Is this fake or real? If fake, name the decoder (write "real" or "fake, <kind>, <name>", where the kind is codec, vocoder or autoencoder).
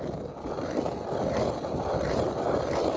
real